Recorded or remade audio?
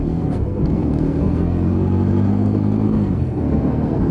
remade